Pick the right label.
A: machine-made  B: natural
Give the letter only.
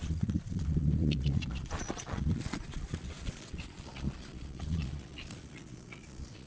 A